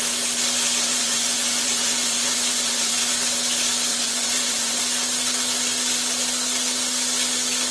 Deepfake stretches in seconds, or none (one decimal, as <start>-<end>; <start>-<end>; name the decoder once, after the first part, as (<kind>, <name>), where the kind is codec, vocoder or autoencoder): 0.9-3.1 (vocoder, Vocos); 3.9-4.8